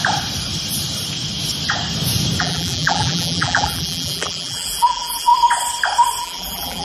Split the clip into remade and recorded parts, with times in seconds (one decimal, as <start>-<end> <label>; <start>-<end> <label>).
0.0-2.4 recorded; 2.4-5.3 remade; 5.3-6.2 recorded; 6.2-6.8 remade